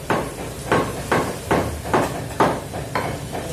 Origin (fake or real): fake